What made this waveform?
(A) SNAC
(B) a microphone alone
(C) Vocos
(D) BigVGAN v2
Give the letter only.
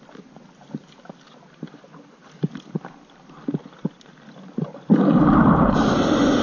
B